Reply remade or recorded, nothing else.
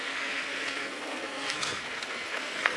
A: remade